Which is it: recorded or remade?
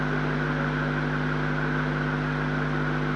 recorded